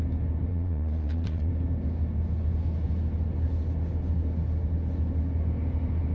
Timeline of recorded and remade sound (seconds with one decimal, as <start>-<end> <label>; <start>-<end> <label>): 0.0-0.5 recorded; 0.5-1.5 remade; 1.5-6.1 recorded